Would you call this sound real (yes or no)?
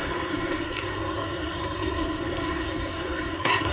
no